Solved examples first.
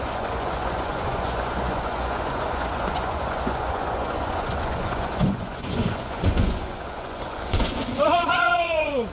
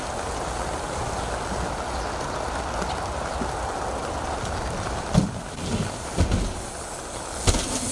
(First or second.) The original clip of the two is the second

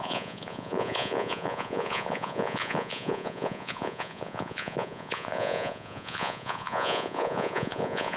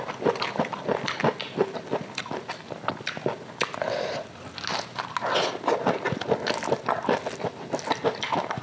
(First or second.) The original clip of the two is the second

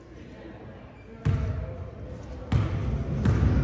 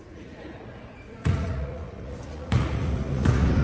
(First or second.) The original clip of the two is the first